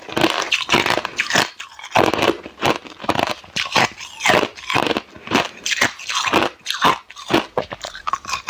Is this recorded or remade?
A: recorded